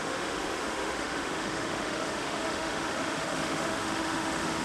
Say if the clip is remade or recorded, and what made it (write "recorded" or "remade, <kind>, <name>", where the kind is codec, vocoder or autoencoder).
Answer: remade, autoencoder, DAC-VAE